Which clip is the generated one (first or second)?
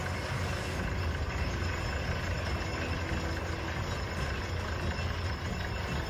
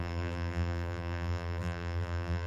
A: second